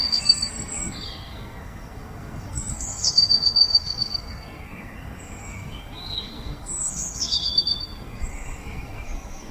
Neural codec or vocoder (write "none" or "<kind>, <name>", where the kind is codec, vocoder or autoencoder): codec, SNAC